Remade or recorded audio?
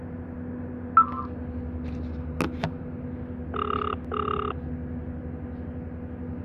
recorded